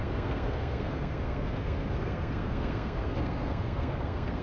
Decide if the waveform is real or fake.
fake